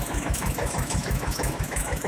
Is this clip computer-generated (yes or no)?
yes